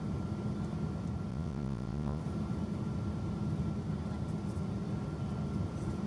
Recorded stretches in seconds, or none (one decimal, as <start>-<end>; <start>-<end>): 0.0-1.3; 2.2-6.1